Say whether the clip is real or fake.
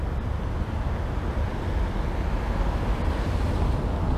real